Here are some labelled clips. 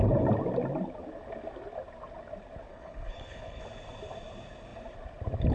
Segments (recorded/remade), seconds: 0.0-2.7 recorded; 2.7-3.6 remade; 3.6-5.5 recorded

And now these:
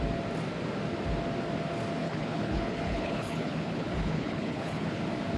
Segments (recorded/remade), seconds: 0.0-2.0 recorded; 2.0-5.0 remade; 5.0-5.4 recorded

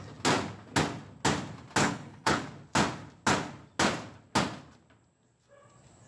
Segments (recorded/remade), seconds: 0.0-1.8 recorded; 1.8-2.4 remade; 2.4-6.1 recorded

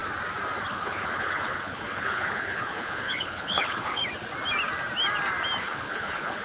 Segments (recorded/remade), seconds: 0.0-0.7 recorded; 0.7-4.0 remade; 4.0-5.6 recorded; 5.6-6.4 remade

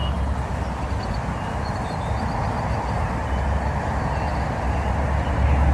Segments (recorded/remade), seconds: 0.0-5.7 recorded

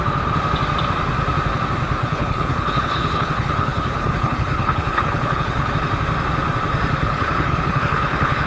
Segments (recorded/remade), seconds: 0.0-2.0 recorded; 2.0-5.7 remade; 5.7-7.0 recorded; 7.0-8.5 remade